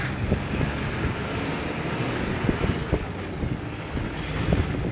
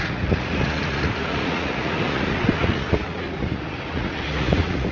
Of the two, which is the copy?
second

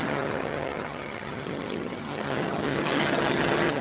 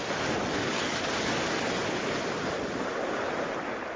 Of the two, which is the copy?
first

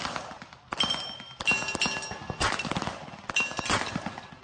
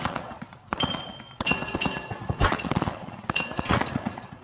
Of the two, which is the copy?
second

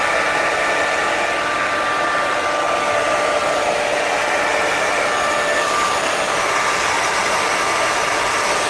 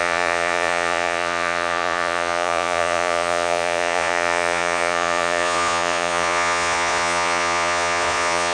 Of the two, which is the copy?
second